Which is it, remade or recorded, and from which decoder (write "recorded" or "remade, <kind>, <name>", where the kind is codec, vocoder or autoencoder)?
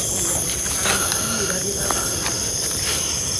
recorded